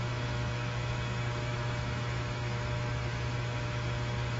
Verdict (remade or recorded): remade